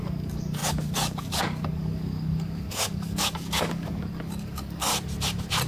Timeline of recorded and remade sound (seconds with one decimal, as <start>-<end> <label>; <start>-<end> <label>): 0.0-4.9 remade; 4.9-5.7 recorded

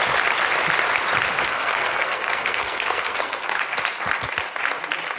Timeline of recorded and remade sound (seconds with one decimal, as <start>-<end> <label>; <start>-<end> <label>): 0.0-1.4 recorded; 1.4-3.6 remade; 3.6-5.2 recorded